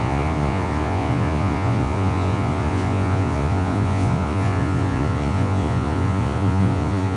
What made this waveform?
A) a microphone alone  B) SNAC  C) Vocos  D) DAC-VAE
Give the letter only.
C